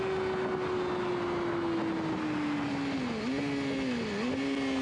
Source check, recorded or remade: recorded